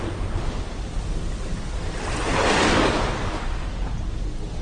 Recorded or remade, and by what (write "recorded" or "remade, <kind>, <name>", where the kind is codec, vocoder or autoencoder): recorded